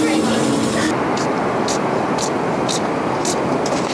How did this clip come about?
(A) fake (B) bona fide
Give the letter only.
B